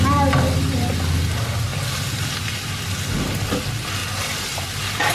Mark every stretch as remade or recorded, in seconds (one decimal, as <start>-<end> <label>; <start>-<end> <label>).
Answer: 0.0-5.1 recorded